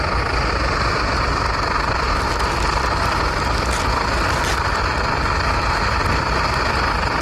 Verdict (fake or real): real